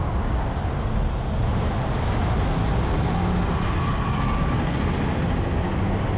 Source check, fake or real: real